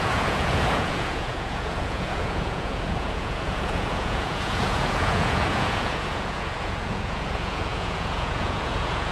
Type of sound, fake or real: fake